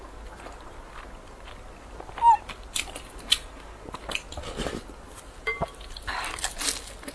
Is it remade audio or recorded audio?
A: recorded